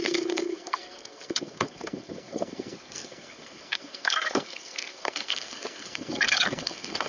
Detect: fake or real fake